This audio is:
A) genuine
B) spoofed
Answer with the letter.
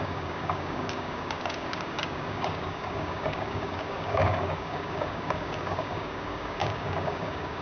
B